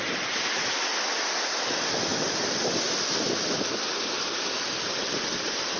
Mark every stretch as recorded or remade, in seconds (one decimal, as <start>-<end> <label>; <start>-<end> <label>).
0.0-5.8 recorded